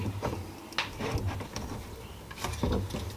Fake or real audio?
real